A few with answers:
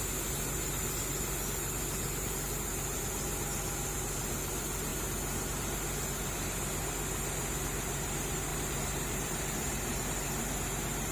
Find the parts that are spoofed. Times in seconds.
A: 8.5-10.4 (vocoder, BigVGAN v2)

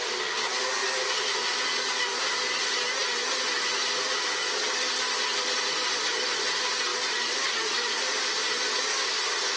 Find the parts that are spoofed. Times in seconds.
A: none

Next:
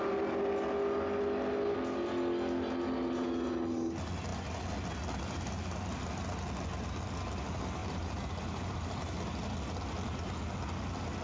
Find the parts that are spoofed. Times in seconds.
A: 7.8-9.0 (vocoder, BigVGAN v2)

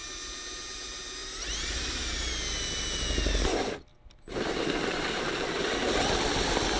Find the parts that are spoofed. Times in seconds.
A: 1.2-2.3 (vocoder, BigVGAN v2); 3.9-5.9

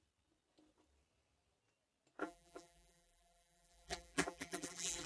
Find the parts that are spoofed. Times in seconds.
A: 2.2-5.1 (vocoder, BigVGAN v2)

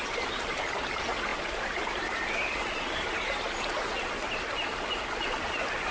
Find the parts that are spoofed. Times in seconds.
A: 1.3-2.3 (vocoder, BigVGAN v2)

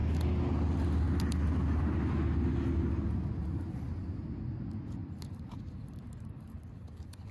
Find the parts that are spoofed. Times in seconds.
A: 5.0-7.3 (vocoder, BigVGAN v2)